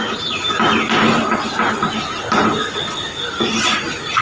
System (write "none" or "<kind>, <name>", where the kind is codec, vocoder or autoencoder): none